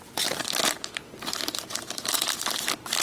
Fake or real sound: fake